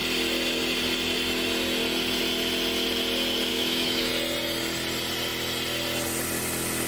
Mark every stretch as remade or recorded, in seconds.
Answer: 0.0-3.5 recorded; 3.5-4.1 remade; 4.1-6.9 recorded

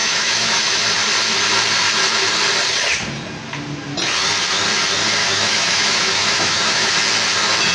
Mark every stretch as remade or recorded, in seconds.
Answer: 0.0-0.8 remade; 0.8-5.2 recorded; 5.2-6.9 remade; 6.9-7.7 recorded